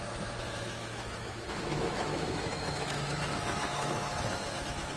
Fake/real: fake